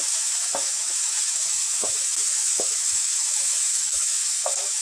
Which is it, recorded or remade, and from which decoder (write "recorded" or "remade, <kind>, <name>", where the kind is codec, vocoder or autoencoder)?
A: remade, autoencoder, DAC-VAE